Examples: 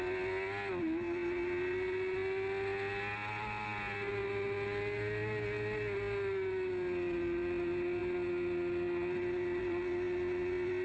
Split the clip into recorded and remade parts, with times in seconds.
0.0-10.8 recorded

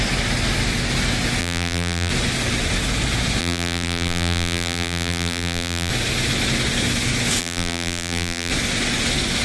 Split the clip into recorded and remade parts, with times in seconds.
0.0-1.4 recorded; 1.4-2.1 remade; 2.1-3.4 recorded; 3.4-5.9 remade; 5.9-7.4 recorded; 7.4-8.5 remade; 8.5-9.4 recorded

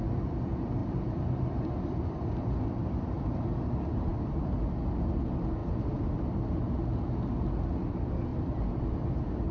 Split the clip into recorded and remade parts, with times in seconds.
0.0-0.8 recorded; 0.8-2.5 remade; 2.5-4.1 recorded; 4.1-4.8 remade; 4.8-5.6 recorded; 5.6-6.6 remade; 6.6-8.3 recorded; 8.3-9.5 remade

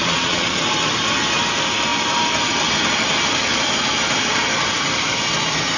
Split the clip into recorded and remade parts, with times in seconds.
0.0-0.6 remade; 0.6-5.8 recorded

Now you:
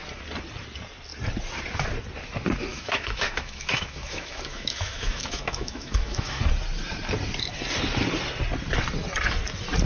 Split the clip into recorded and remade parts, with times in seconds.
0.0-2.7 recorded; 2.7-6.4 remade; 6.4-9.9 recorded